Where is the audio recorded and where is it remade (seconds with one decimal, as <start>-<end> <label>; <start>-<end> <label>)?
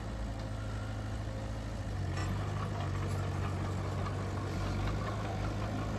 0.0-6.0 recorded